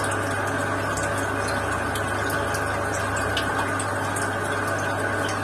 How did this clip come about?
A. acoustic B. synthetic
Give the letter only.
A